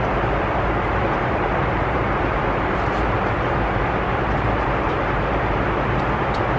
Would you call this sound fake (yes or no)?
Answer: yes